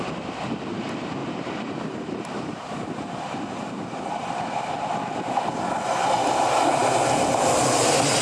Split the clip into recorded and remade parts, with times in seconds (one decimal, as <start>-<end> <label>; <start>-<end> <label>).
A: 0.0-1.2 recorded; 1.2-4.0 remade; 4.0-8.2 recorded